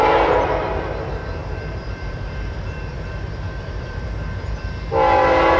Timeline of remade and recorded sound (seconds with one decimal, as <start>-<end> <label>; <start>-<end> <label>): 0.0-1.4 recorded; 1.4-4.6 remade; 4.6-5.6 recorded